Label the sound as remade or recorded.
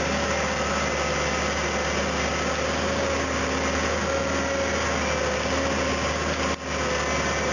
recorded